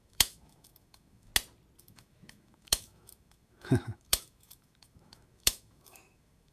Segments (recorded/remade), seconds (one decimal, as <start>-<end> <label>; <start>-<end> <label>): 0.0-1.3 remade; 1.3-1.8 recorded; 1.8-6.5 remade